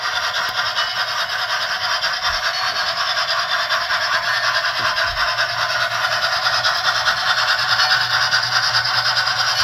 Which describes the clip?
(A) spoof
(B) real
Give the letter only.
B